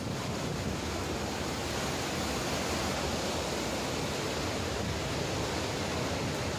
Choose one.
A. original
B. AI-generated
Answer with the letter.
A